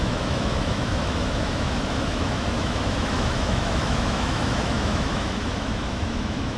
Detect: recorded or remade remade